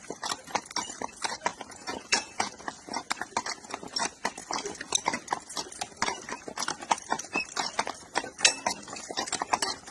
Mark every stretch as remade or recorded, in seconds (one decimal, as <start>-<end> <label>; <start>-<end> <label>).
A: 0.0-1.5 recorded; 1.5-2.6 remade; 2.6-9.9 recorded